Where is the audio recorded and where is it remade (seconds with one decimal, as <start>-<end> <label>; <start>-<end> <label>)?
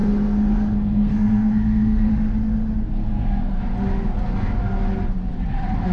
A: 0.0-2.1 remade; 2.1-3.0 recorded; 3.0-3.6 remade; 3.6-5.9 recorded